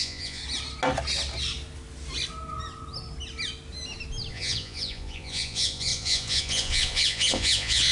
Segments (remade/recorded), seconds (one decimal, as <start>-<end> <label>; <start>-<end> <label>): 0.0-0.4 remade; 0.4-4.3 recorded; 4.3-7.9 remade